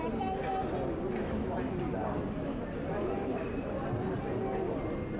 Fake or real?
real